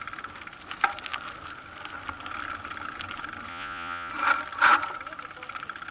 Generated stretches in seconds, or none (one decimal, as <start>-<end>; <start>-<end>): 3.5-4.1